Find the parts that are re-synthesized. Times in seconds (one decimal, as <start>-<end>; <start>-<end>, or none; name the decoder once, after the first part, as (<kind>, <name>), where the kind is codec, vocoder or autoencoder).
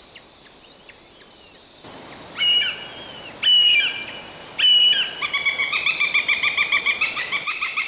5.6-6.8 (vocoder, BigVGAN v2)